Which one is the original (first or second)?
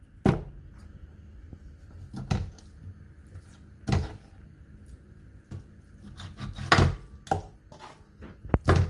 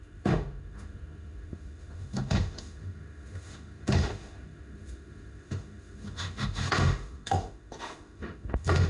first